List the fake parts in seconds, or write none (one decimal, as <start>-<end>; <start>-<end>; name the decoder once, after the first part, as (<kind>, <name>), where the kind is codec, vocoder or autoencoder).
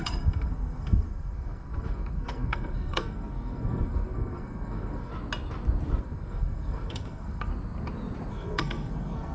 0.0-5.1 (codec, SNAC); 6.0-7.5; 8.3-9.3